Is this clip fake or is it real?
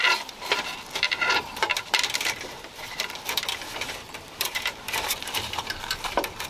fake